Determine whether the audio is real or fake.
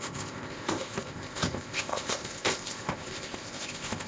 fake